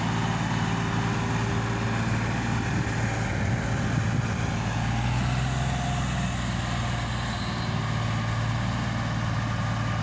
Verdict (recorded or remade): recorded